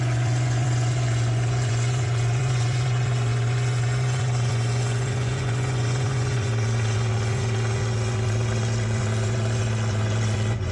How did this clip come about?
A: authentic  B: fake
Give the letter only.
B